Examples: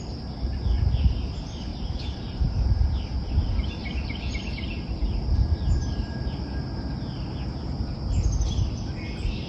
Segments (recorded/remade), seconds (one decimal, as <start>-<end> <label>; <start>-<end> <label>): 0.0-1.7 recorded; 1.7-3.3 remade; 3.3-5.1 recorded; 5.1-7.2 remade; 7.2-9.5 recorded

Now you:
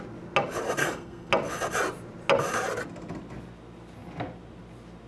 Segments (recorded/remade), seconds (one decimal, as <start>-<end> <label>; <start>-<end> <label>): 0.0-0.8 recorded; 0.8-1.3 remade; 1.3-5.1 recorded

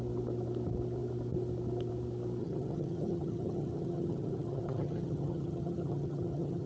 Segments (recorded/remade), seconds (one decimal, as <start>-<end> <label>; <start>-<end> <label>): 0.0-2.4 recorded; 2.4-6.7 remade

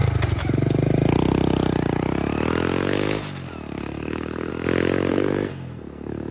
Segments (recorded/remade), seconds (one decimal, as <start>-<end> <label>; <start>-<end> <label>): 0.0-3.8 recorded; 3.8-4.5 remade; 4.5-5.1 recorded; 5.1-6.3 remade